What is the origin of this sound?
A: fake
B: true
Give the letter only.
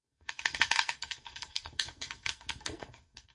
A